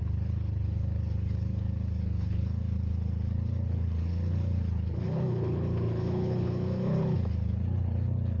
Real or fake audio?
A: fake